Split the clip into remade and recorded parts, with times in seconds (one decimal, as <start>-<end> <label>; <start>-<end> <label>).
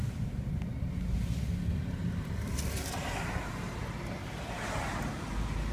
0.0-5.7 recorded